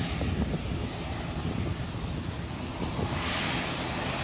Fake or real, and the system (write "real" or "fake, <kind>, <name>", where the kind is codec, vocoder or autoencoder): real